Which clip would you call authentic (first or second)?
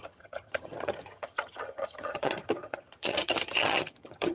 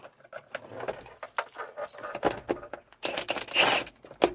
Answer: second